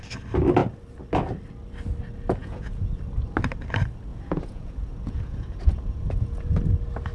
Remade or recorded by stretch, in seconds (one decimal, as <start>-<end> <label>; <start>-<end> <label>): 0.0-2.4 recorded; 2.4-3.0 remade; 3.0-4.1 recorded; 4.1-6.6 remade; 6.6-7.1 recorded